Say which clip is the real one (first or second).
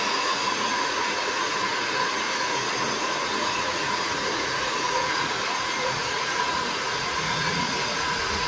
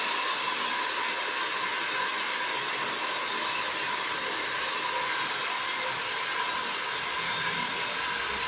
second